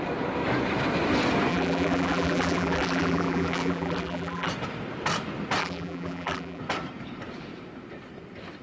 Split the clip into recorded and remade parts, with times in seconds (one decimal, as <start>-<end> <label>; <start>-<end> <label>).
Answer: 0.0-1.5 recorded; 1.5-4.5 remade; 4.5-5.6 recorded; 5.6-6.6 remade; 6.6-8.6 recorded